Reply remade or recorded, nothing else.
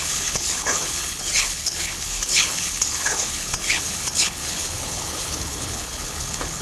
remade